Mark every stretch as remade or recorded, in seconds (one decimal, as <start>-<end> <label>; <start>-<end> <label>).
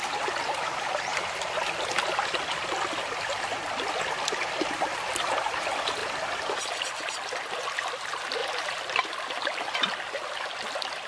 0.0-11.1 recorded